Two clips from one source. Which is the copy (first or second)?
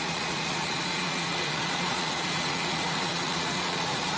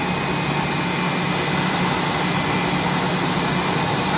first